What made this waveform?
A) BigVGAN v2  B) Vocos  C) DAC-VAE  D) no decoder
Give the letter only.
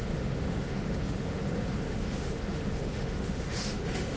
C